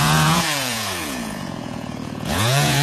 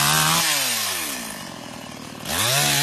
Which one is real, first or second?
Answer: second